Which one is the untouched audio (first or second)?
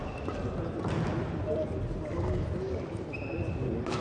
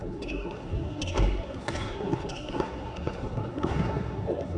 first